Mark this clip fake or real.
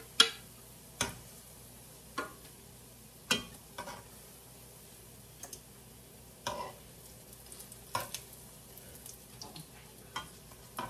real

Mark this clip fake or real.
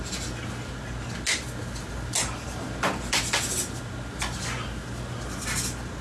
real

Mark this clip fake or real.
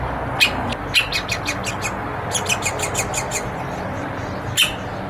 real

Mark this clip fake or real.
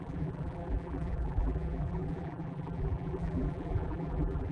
fake